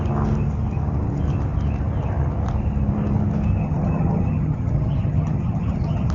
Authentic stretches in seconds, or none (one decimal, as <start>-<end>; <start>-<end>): 0.0-3.6